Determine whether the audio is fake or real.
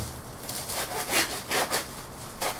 real